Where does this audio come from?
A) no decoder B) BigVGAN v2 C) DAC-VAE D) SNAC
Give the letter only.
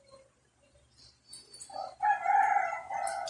A